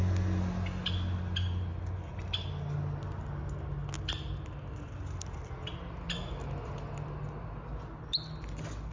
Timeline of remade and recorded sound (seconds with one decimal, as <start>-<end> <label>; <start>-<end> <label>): 0.0-8.9 recorded